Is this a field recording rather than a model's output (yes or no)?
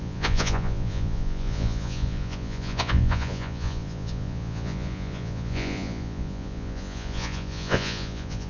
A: no